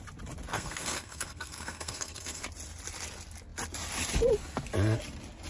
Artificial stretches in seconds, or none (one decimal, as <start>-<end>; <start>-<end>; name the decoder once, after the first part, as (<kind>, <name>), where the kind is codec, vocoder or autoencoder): 0.5-2.4 (codec, SNAC)